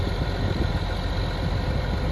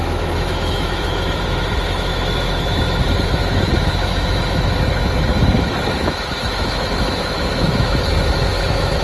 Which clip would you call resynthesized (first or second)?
second